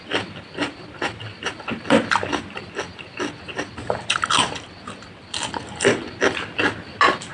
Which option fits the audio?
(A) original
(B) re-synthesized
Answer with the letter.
A